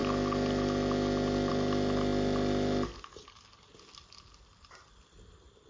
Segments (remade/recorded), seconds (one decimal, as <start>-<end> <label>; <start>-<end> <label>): 0.0-5.7 recorded